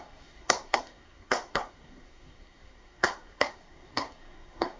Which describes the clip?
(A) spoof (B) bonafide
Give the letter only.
A